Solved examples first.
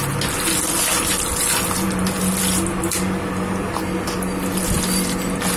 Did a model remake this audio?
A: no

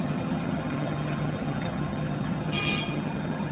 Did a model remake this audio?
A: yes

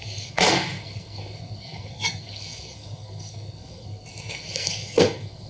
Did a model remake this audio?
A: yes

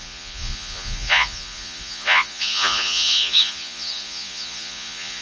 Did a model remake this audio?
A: yes